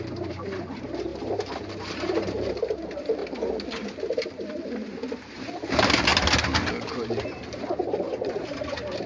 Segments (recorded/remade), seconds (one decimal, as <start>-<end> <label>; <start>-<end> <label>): 0.0-3.2 remade; 3.2-4.7 recorded; 4.7-6.1 remade; 6.1-6.9 recorded; 6.9-9.1 remade